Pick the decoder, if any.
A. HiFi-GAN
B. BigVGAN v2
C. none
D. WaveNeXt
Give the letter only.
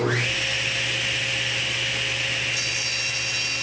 C